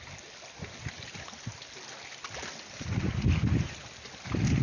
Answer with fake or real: real